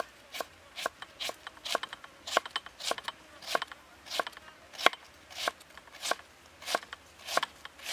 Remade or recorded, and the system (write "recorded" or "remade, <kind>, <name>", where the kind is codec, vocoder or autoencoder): recorded